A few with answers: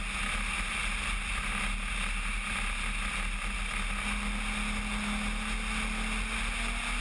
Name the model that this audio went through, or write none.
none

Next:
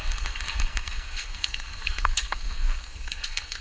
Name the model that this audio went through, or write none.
codec, SNAC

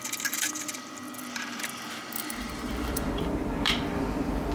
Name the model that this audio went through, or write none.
vocoder, BigVGAN v2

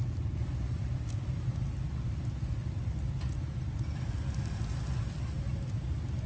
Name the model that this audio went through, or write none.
none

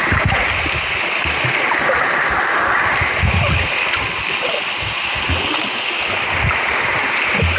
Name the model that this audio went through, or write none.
none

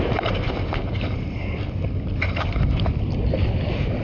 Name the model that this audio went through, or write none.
none